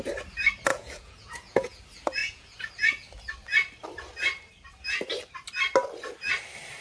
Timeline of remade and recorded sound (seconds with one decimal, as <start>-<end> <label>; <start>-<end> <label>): 0.0-0.7 recorded; 0.7-1.8 remade; 1.8-2.2 recorded; 2.2-2.7 remade; 2.7-6.8 recorded